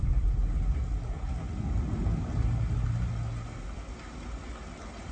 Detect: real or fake real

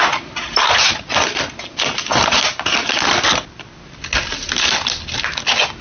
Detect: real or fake real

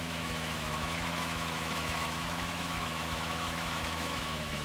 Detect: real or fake fake